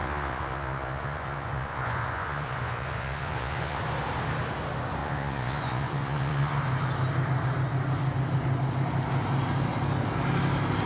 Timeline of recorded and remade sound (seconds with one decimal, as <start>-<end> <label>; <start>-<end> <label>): 0.0-3.8 remade; 3.8-5.0 recorded; 5.0-6.6 remade; 6.6-10.9 recorded